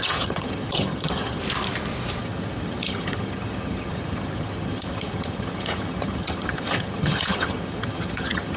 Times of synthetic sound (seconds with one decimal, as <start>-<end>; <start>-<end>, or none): 0.0-1.4; 2.2-8.6